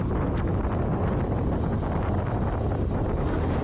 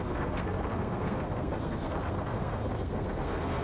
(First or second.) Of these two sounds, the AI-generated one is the second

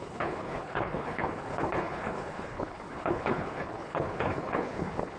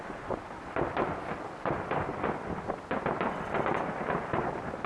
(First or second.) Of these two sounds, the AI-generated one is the first